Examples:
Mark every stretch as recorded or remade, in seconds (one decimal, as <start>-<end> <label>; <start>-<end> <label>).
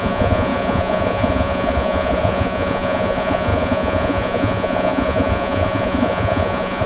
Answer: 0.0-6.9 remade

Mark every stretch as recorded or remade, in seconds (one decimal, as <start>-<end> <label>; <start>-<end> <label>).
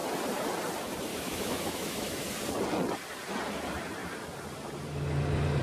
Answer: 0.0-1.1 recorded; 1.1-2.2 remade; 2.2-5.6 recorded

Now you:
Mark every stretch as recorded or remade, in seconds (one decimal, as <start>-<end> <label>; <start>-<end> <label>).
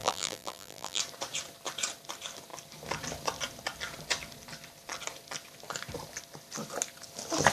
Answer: 0.0-1.0 remade; 1.0-7.5 recorded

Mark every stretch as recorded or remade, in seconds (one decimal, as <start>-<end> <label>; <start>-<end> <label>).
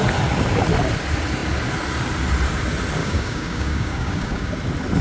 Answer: 0.0-3.0 recorded; 3.0-4.5 remade; 4.5-5.0 recorded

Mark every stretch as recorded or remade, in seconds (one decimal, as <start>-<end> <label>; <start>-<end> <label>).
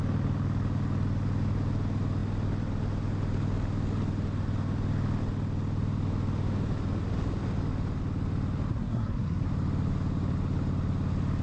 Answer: 0.0-8.7 recorded; 8.7-9.5 remade; 9.5-11.4 recorded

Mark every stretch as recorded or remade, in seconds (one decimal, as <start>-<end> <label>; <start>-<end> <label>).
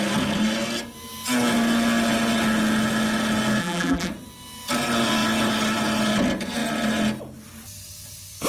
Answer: 0.0-3.6 recorded; 3.6-4.1 remade; 4.1-8.5 recorded